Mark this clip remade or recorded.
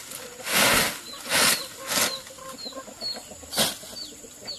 recorded